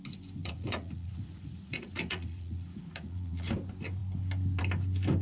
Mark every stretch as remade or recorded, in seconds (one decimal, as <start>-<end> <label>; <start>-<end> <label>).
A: 0.0-0.4 recorded; 0.4-3.5 remade; 3.5-5.2 recorded